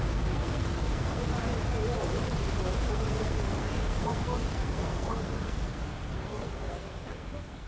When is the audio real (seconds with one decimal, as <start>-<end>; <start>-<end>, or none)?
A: 1.3-2.9

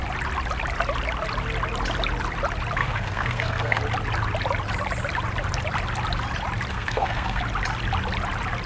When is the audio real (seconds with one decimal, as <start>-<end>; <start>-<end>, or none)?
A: 0.0-2.8; 3.8-6.7; 7.4-8.7